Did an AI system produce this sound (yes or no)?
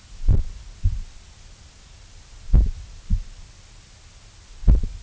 no